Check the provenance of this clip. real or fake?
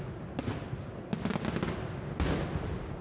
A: real